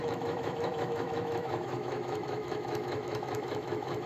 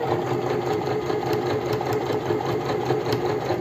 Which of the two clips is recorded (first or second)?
second